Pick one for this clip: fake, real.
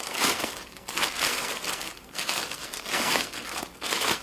fake